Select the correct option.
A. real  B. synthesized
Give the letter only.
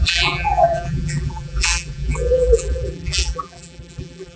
B